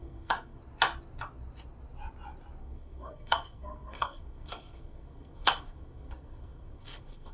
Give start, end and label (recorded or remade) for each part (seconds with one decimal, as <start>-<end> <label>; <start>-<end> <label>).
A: 0.0-0.6 remade; 0.6-2.6 recorded; 2.6-7.3 remade